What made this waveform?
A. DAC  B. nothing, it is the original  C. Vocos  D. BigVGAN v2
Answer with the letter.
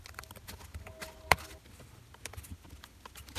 B